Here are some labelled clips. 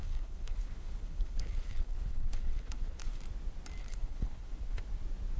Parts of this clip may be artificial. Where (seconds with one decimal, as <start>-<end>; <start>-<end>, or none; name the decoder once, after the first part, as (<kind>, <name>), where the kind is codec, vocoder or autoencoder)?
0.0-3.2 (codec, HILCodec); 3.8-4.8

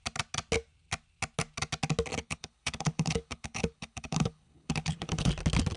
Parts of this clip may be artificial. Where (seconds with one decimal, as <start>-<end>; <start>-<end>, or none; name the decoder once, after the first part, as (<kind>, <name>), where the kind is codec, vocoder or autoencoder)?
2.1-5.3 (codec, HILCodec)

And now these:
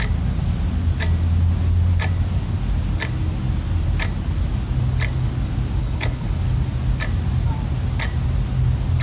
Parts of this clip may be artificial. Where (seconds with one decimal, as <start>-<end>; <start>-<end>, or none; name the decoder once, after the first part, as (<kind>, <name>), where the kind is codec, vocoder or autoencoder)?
5.8-6.4 (codec, HILCodec)